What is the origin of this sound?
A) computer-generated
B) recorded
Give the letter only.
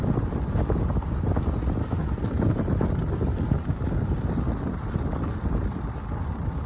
B